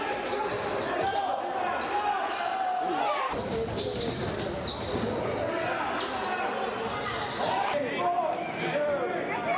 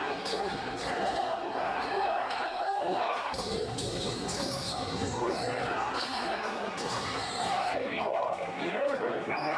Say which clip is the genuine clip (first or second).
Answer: first